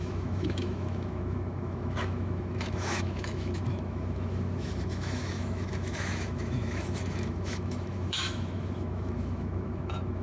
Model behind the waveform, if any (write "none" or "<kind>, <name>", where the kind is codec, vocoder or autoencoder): autoencoder, DAC-VAE